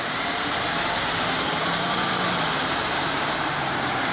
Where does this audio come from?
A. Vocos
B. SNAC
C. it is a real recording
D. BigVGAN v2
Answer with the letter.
D